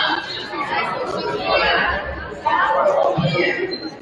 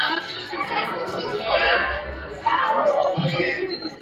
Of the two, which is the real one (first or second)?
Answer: first